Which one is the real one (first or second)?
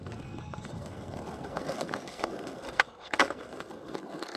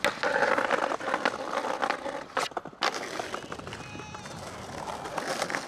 second